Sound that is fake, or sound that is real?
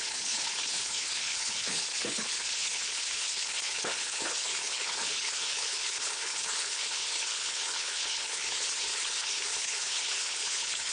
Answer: fake